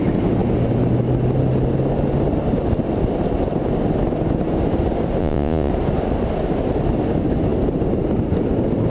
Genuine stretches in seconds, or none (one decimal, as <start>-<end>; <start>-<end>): 0.0-5.2; 5.7-8.9

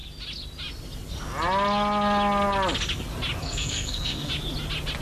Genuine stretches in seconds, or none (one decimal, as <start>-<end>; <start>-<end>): 0.0-3.4; 4.3-5.0

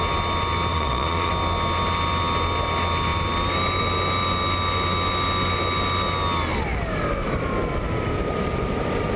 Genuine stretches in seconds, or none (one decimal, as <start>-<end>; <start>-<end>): 0.0-0.7; 1.3-9.2

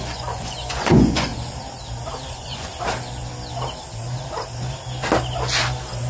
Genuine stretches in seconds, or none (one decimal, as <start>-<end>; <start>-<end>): 1.3-2.3; 2.7-6.1

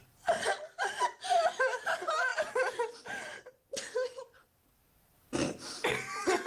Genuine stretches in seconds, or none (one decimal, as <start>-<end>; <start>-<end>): 0.0-2.3; 5.8-6.5

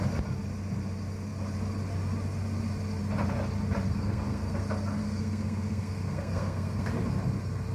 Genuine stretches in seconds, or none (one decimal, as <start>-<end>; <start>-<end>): 0.0-3.9; 4.6-5.0; 6.9-7.7